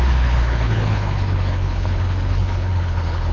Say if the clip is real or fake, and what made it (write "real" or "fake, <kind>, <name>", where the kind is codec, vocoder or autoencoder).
fake, codec, HILCodec